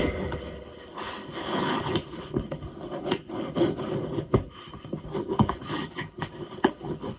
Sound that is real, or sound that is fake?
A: fake